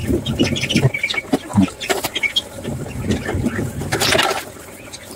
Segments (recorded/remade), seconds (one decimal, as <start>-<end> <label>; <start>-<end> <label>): 0.0-0.7 remade; 0.7-1.5 recorded; 1.5-4.1 remade; 4.1-5.2 recorded